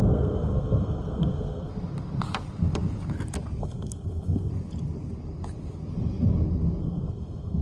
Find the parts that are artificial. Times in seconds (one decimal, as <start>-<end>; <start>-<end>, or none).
0.0-1.7; 3.6-4.5; 6.8-7.6